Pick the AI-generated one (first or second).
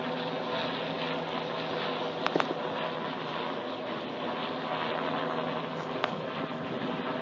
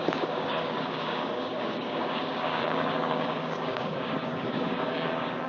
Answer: second